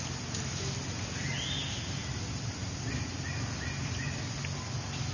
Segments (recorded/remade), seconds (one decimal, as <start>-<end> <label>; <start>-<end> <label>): 0.0-5.1 recorded